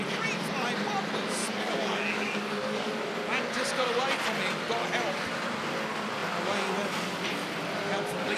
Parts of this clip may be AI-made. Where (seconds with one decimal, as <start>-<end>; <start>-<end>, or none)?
1.4-3.0

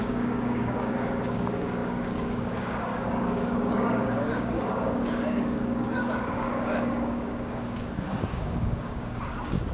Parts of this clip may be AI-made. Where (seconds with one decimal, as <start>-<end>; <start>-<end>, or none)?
0.0-9.7

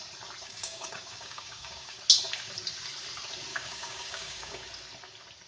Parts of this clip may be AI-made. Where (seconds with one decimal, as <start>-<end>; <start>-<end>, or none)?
0.4-2.0; 3.5-4.7

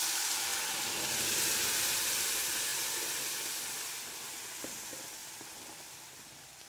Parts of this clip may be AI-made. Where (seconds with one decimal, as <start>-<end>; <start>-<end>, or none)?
none

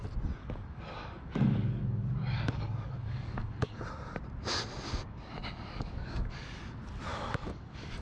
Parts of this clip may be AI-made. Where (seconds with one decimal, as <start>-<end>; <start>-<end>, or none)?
0.4-3.8; 5.0-6.6; 7.1-8.0

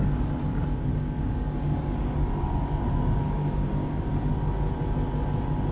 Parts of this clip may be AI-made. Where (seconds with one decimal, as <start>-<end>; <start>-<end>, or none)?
0.9-4.3